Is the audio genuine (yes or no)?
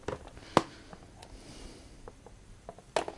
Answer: yes